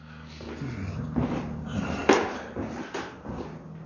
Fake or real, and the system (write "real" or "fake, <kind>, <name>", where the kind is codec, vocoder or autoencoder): real